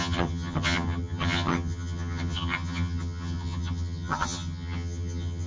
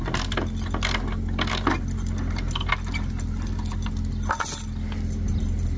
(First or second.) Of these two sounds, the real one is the second